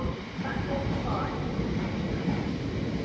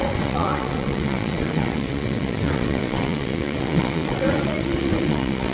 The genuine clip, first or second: first